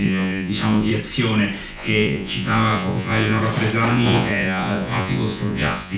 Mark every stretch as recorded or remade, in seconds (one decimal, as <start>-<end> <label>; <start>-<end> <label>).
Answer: 0.0-0.9 remade; 0.9-1.7 recorded; 1.7-3.4 remade; 3.4-3.9 recorded; 3.9-6.0 remade